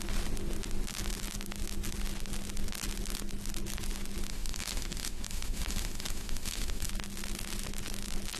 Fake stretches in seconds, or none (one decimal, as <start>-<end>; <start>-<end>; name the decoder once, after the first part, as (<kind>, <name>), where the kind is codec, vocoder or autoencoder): 4.3-6.9 (autoencoder, DAC-VAE)

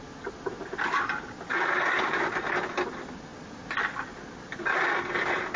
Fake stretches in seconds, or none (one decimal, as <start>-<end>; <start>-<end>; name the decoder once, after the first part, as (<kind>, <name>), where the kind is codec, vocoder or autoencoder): none